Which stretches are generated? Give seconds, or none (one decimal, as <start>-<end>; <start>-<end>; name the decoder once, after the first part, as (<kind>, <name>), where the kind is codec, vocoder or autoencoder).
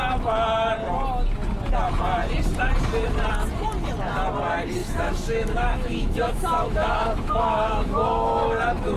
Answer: 4.8-8.6 (autoencoder, DAC-VAE)